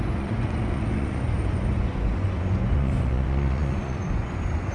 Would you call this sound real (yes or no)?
no